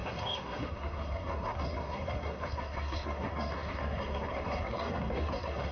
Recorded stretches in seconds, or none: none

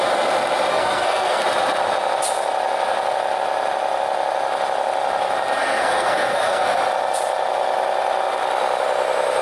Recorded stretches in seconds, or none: 0.0-0.7; 1.4-5.6; 6.8-9.4

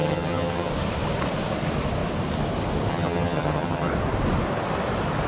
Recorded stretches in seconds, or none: 0.7-2.9; 3.9-5.3

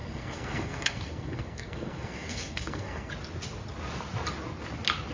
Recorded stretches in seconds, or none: 3.1-5.1